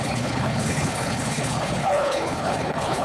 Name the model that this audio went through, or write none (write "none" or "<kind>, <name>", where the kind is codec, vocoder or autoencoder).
codec, HILCodec